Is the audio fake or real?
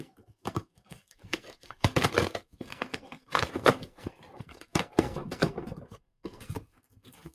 fake